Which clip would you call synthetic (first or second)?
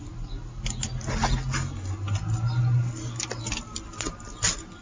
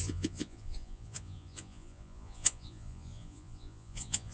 second